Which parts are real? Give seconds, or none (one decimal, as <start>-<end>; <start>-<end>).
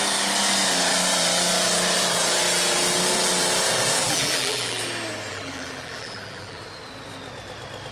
0.0-4.0; 4.8-5.3; 6.6-7.9